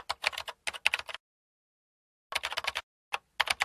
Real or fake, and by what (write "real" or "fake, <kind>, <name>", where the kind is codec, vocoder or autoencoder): real